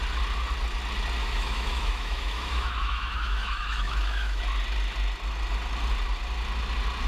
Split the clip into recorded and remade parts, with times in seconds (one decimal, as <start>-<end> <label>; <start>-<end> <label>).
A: 0.0-1.2 recorded; 1.2-4.4 remade; 4.4-7.1 recorded